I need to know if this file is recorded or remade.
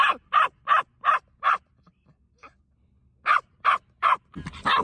recorded